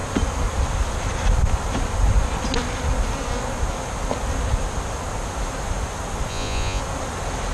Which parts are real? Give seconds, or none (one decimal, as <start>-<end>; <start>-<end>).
0.0-6.3; 6.8-7.5